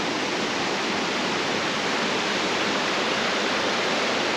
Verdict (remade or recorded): remade